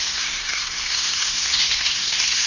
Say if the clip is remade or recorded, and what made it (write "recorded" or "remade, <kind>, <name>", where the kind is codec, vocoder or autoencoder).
remade, codec, SNAC